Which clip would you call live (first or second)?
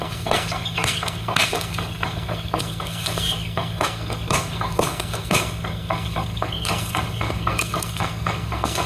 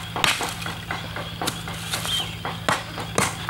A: second